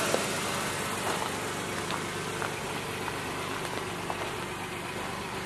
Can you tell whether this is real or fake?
real